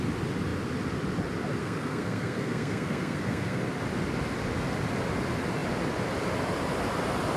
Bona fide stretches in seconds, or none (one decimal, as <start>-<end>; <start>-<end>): 0.0-1.6; 3.6-7.4